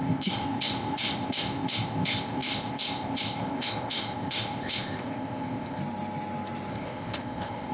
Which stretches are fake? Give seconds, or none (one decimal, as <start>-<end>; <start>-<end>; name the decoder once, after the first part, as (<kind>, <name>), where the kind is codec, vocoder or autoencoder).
0.0-5.8 (codec, ZipCodec); 6.7-7.7